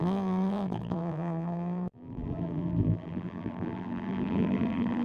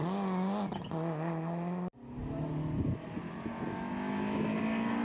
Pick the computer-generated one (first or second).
first